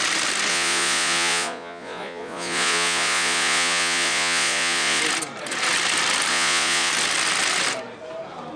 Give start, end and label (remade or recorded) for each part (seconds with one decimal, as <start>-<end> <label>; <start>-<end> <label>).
0.0-0.5 recorded; 0.5-5.0 remade; 5.0-6.3 recorded; 6.3-6.9 remade; 6.9-8.6 recorded